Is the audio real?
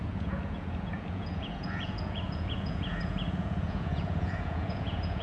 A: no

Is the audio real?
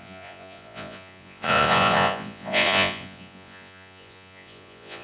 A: no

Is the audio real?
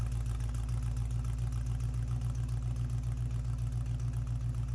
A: yes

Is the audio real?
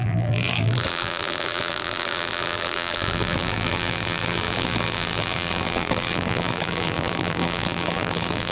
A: no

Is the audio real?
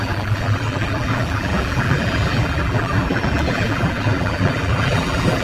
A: no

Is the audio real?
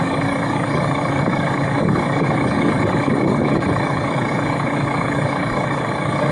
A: no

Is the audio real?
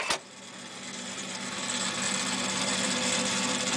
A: yes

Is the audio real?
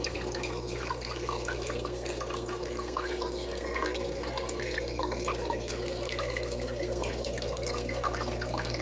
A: no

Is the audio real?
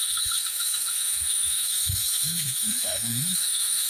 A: no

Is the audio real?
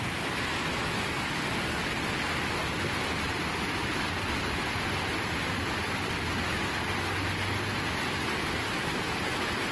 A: yes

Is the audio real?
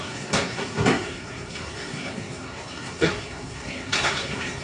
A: no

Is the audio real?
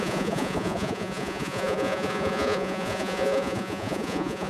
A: no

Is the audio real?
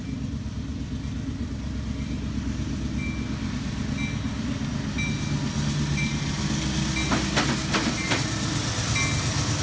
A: yes